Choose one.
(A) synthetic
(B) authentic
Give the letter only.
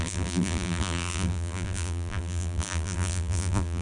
A